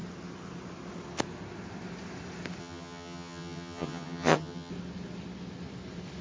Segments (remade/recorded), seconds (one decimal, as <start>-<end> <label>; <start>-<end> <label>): 0.0-2.6 recorded; 2.6-4.7 remade; 4.7-6.2 recorded